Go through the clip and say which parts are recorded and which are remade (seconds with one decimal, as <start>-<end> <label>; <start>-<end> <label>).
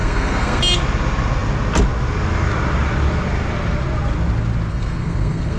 0.0-0.6 remade; 0.6-4.7 recorded; 4.7-5.6 remade